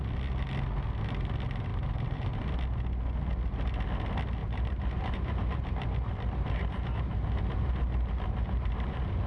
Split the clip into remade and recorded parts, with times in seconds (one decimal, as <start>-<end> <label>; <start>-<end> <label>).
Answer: 0.0-1.7 recorded; 1.7-2.3 remade; 2.3-4.4 recorded; 4.4-9.3 remade

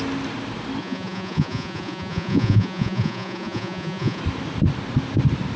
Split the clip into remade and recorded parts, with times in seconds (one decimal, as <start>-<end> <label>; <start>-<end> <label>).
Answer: 0.0-0.8 recorded; 0.8-4.2 remade; 4.2-5.6 recorded